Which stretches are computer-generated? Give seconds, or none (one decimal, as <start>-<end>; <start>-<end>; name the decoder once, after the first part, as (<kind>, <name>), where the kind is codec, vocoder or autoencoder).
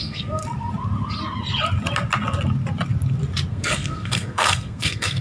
0.0-0.4 (codec, SNAC); 3.5-5.2